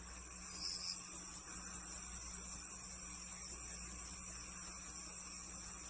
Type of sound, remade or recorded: recorded